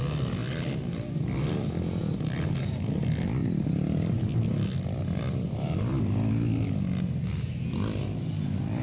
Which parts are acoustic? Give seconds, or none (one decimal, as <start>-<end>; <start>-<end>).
0.0-8.8